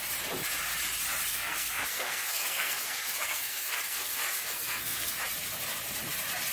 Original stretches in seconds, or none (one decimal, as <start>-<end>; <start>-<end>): 0.0-1.3; 5.2-6.5